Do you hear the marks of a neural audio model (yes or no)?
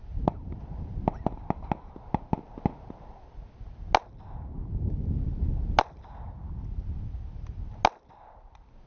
no